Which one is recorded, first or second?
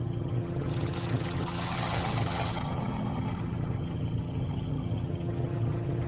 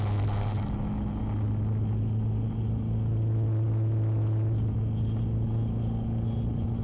second